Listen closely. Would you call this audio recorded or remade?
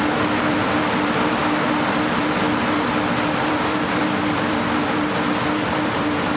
remade